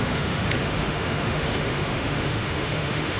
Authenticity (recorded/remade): remade